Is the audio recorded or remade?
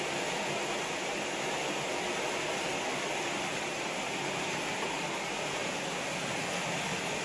recorded